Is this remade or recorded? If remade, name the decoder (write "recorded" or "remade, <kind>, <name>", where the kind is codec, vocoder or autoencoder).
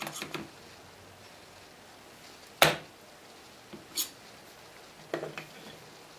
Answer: recorded